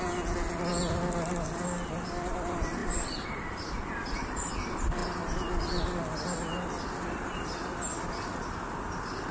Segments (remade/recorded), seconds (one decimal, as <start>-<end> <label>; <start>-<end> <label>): 0.0-2.8 recorded; 2.8-4.5 remade; 4.5-9.3 recorded